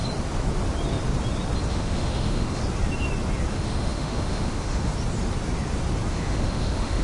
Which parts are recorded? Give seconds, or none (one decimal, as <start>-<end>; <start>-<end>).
0.0-1.7; 2.6-3.5; 4.9-6.1